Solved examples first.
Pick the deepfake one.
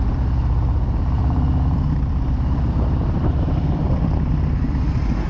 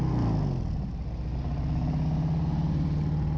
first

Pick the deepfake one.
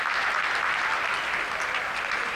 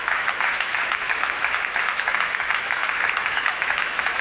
second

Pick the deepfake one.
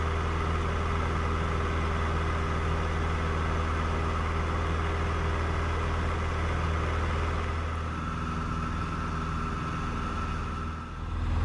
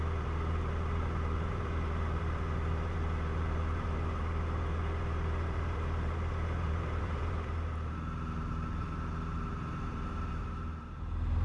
second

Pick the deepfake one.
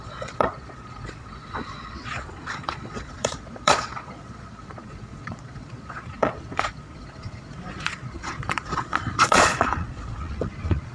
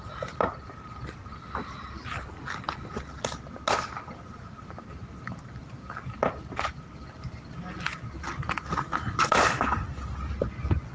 first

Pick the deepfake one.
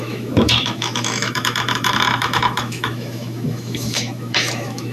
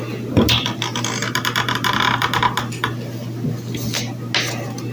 first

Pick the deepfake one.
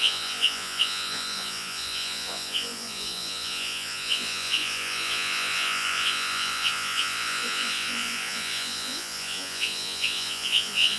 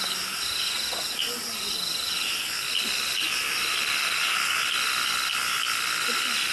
first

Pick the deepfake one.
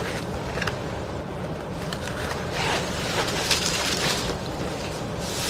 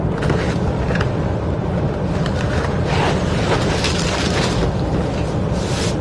first